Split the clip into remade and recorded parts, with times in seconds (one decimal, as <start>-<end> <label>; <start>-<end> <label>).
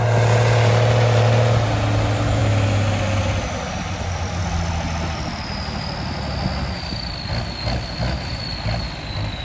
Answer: 0.0-9.4 recorded